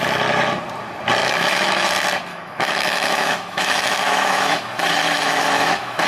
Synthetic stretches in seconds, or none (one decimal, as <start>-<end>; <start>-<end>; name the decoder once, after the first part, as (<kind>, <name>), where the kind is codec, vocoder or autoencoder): 1.2-1.9 (autoencoder, DAC-VAE); 2.3-6.1